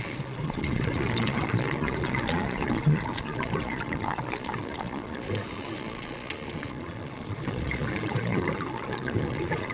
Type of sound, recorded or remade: remade